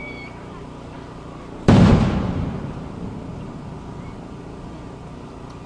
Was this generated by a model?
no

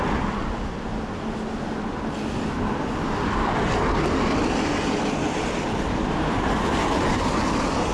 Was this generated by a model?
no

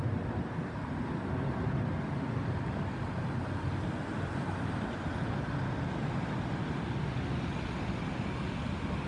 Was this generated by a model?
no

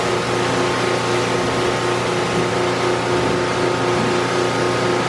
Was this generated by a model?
no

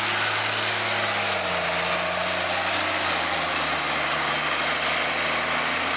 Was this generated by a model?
no